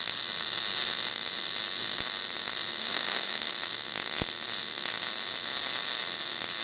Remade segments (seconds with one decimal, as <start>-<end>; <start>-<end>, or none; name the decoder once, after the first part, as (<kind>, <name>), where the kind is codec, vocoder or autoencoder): 2.8-3.5 (autoencoder, DAC-VAE)